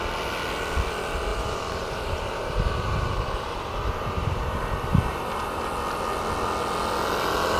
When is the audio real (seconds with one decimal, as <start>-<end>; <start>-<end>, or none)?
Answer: 0.0-1.3; 5.6-7.6